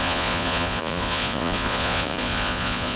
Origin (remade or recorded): remade